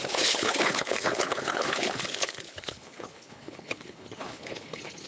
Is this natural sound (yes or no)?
no